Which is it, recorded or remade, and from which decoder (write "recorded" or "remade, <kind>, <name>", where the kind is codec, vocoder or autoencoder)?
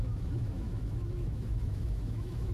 remade, autoencoder, DAC-VAE